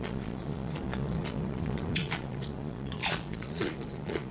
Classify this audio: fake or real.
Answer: fake